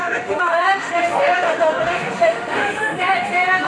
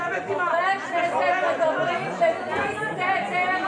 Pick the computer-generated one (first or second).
first